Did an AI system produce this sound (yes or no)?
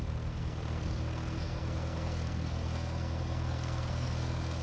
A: yes